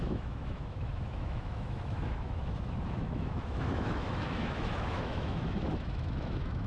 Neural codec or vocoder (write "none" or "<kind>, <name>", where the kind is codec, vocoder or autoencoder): autoencoder, DAC-VAE